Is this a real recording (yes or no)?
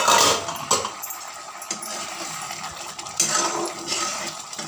yes